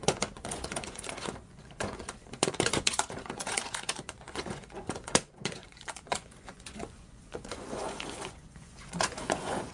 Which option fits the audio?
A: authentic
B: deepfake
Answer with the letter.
B